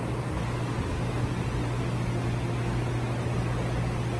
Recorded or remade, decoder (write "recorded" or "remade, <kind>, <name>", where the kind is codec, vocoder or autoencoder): recorded